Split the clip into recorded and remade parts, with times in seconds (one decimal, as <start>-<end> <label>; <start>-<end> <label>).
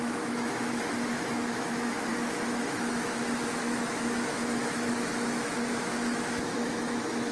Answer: 0.0-7.3 remade